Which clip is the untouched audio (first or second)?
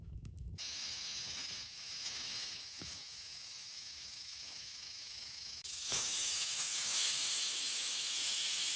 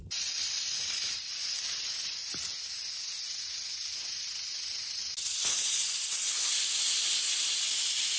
second